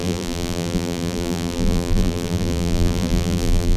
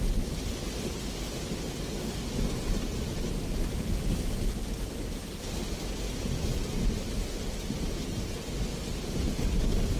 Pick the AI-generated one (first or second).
first